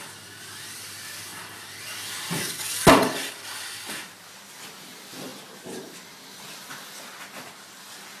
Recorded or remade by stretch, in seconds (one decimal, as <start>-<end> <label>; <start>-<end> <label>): 0.0-8.2 recorded